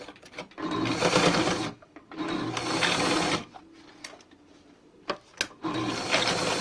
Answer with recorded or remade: recorded